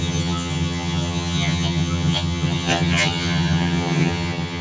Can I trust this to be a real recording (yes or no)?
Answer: no